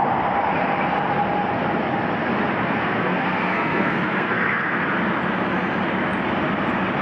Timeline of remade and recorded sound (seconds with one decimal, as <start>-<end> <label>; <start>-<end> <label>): 0.0-2.7 recorded; 2.7-4.8 remade; 4.8-7.0 recorded